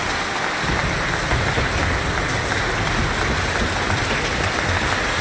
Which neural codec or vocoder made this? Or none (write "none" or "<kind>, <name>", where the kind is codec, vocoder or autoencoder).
none